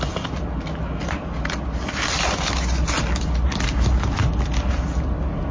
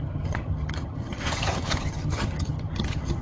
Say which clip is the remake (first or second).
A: second